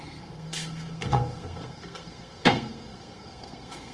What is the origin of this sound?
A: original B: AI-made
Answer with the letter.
B